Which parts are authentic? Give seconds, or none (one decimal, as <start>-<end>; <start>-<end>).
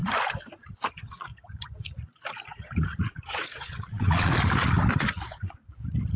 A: 0.0-0.6; 1.3-2.4; 4.3-4.9; 5.6-6.2